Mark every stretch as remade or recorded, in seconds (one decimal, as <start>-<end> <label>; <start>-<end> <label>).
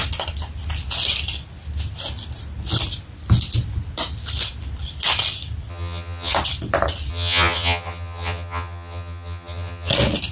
0.0-5.7 recorded; 5.7-6.3 remade; 6.3-7.1 recorded; 7.1-9.9 remade; 9.9-10.3 recorded